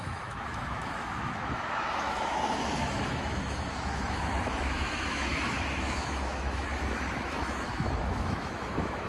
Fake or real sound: fake